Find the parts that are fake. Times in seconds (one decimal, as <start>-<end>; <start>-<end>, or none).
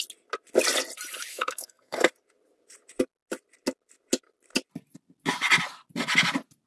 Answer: 1.3-2.1